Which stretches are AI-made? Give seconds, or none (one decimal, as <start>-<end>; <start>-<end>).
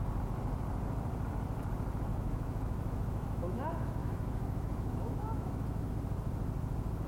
2.1-3.6; 4.0-5.9